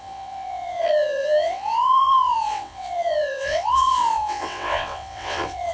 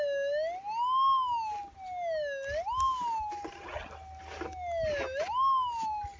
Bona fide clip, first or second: second